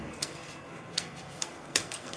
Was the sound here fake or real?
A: fake